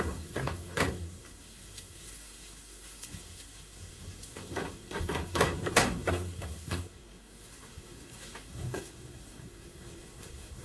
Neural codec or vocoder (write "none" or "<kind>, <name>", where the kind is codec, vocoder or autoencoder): codec, SNAC